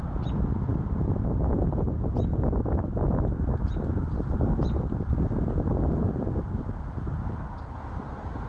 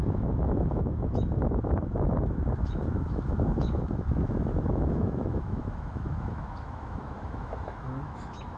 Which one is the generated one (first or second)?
second